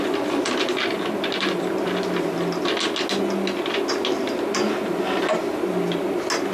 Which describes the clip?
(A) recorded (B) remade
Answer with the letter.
A